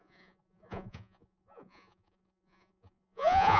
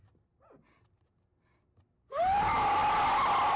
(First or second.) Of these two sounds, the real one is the second